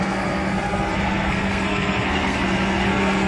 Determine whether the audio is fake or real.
fake